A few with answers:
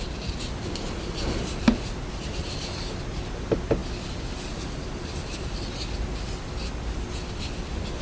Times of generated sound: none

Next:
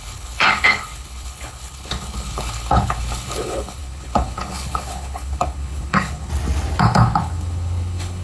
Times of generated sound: 0.0-6.3 (codec, HILCodec); 6.8-8.2

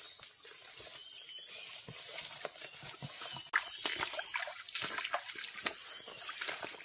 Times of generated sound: none

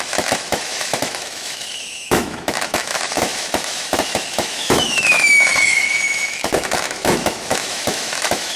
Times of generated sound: 0.0-8.6 (autoencoder, DAC-VAE)